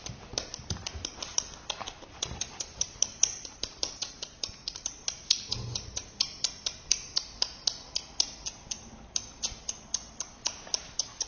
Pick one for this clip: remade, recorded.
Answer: recorded